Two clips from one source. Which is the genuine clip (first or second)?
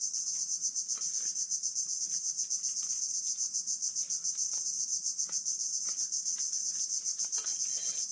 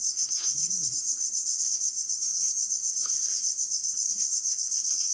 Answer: first